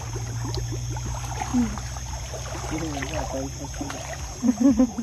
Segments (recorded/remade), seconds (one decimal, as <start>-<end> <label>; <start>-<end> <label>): 0.0-5.0 recorded